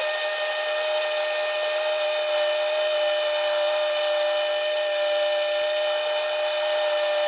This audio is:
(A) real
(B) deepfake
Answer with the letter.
A